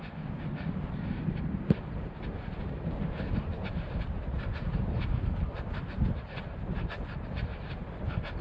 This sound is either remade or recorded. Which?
remade